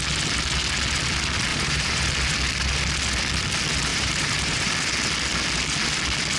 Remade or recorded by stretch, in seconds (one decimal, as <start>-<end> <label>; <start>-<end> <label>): 0.0-1.5 recorded; 1.5-2.1 remade; 2.1-3.9 recorded; 3.9-4.7 remade; 4.7-6.4 recorded

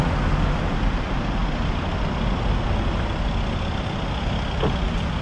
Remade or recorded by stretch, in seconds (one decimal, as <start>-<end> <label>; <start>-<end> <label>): 0.0-5.2 recorded

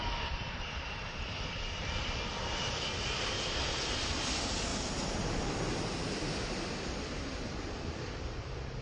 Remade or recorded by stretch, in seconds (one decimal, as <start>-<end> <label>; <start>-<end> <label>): 0.0-4.7 remade; 4.7-5.8 recorded; 5.8-8.8 remade

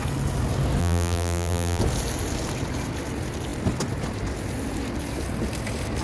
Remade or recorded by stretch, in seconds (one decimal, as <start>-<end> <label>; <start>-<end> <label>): 0.0-0.8 recorded; 0.8-1.8 remade; 1.8-6.0 recorded

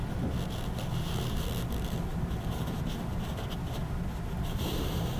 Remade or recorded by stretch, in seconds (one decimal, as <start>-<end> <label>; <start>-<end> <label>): 0.0-2.1 recorded; 2.1-5.2 remade

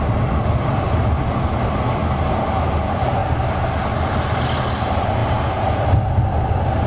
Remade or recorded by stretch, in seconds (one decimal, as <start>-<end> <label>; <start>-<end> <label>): 0.0-6.9 recorded

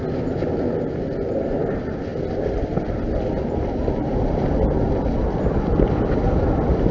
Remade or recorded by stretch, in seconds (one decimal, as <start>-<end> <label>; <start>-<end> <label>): 0.0-2.1 recorded; 2.1-6.1 remade; 6.1-6.9 recorded